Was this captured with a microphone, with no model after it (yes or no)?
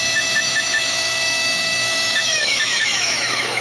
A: no